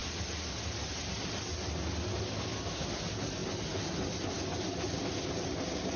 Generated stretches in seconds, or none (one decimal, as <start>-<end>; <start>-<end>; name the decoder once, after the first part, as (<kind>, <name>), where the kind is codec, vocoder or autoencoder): none